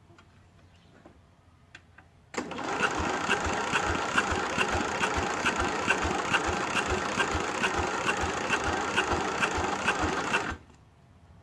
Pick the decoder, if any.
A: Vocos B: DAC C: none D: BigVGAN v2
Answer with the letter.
D